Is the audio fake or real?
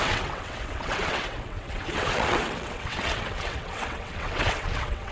fake